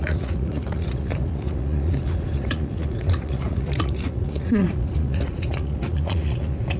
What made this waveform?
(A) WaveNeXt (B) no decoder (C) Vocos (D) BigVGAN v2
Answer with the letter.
C